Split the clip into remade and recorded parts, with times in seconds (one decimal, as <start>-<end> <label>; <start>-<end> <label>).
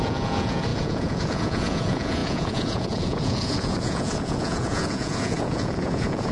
0.0-6.3 remade